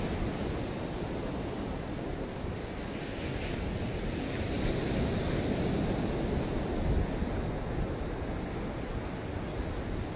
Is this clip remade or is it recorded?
recorded